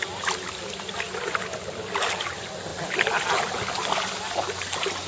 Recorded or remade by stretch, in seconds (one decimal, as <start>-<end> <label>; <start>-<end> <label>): 0.0-2.7 remade; 2.7-5.1 recorded